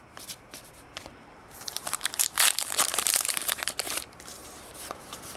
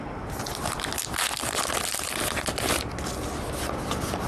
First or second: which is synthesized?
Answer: first